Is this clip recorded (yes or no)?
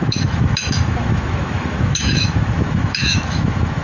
no